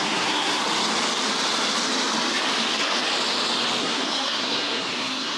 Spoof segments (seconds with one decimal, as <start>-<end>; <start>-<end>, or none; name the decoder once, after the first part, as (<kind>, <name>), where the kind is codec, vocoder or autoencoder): 0.0-0.6 (codec, SNAC); 3.8-5.4